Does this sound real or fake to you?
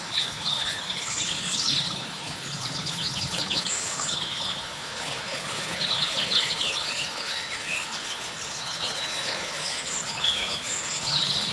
fake